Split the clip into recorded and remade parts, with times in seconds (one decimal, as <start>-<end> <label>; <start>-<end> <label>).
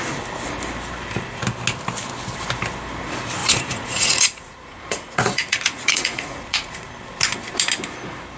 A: 0.0-3.4 recorded; 3.4-6.9 remade; 6.9-8.4 recorded